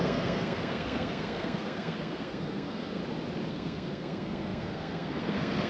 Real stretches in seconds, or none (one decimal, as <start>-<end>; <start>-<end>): 3.0-3.5